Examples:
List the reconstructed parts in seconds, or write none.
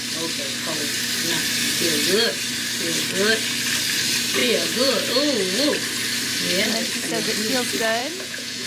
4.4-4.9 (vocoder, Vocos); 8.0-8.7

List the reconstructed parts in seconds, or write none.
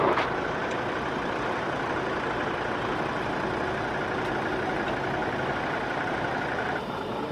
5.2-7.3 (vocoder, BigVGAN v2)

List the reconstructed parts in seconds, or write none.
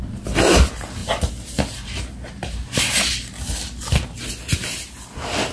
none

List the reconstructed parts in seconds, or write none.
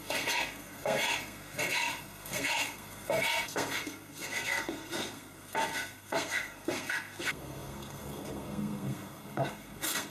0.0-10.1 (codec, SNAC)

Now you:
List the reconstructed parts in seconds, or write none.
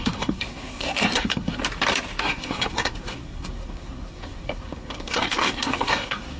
0.0-1.6 (codec, SNAC); 2.2-6.4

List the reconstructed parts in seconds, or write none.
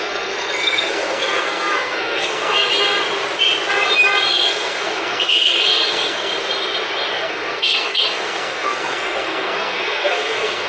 0.0-2.7 (codec, SNAC); 4.3-6.3; 7.1-10.7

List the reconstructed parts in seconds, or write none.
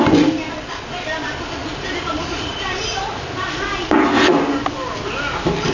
1.7-3.5 (vocoder, BigVGAN v2)